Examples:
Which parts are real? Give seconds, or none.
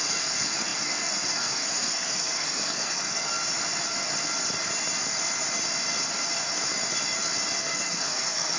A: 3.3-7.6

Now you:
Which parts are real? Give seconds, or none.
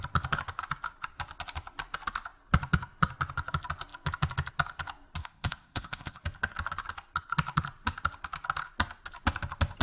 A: 0.0-5.2; 6.2-9.8